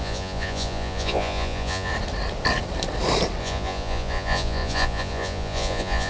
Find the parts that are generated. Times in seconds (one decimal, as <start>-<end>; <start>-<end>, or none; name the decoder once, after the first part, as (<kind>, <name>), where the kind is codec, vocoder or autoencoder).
0.0-1.9 (vocoder, Vocos); 3.4-6.1